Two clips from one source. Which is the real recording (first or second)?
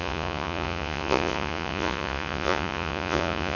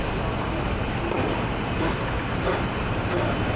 second